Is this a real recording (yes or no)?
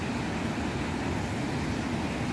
yes